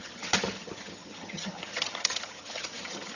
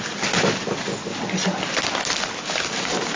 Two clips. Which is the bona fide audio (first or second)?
second